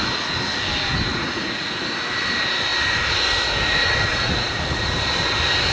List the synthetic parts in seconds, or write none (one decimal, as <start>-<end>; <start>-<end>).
1.1-1.7; 4.1-4.9